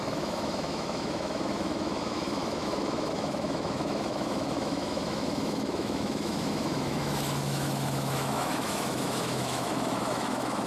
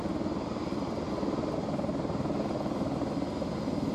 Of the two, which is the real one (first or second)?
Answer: second